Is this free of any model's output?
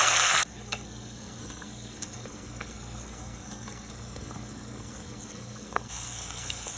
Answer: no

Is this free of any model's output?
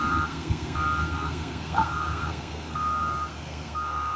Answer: no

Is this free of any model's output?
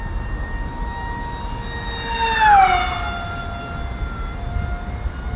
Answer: yes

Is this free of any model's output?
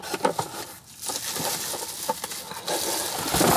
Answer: yes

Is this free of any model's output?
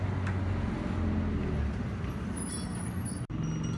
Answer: yes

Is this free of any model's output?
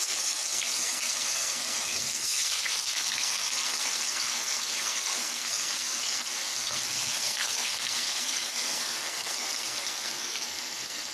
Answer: no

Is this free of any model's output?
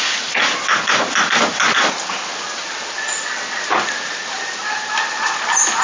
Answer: yes